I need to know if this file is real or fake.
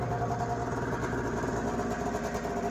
real